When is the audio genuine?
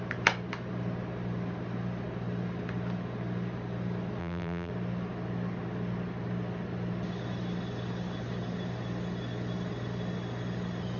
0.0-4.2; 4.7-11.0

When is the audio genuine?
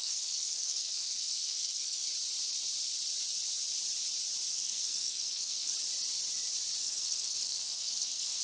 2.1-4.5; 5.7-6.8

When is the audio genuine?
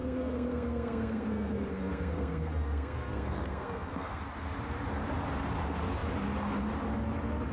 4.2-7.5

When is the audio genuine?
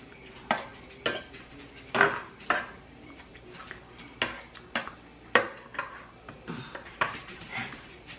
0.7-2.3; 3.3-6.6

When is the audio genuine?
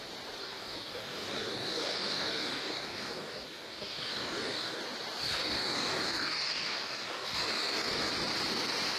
0.0-0.4; 4.8-5.2; 8.1-9.0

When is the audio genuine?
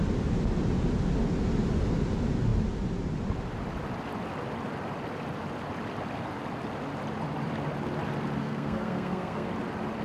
0.0-8.4; 9.5-10.0